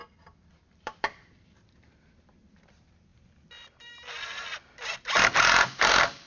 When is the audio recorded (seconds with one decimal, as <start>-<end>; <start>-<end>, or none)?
2.4-6.3